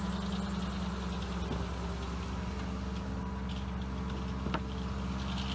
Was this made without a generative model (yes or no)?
yes